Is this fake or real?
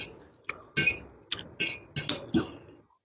real